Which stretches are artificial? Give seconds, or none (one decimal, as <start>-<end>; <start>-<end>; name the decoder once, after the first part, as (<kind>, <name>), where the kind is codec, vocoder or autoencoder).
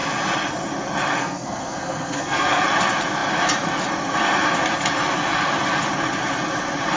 1.2-2.6 (codec, SNAC)